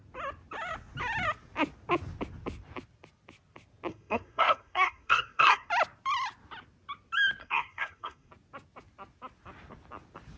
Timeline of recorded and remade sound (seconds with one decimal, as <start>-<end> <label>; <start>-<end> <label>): 0.0-3.9 recorded; 3.9-5.7 remade; 5.7-7.4 recorded; 7.4-8.3 remade; 8.3-10.4 recorded